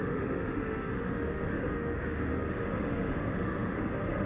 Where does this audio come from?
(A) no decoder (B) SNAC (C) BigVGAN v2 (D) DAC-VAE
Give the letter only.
D